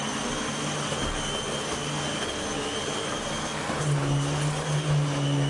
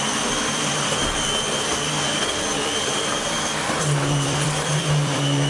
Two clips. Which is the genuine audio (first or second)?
first